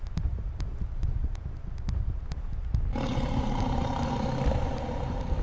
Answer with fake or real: fake